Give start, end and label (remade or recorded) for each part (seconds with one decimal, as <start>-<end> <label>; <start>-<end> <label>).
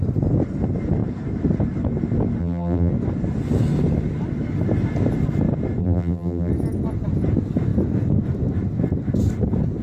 0.0-2.4 recorded; 2.4-2.9 remade; 2.9-5.8 recorded; 5.8-6.5 remade; 6.5-9.8 recorded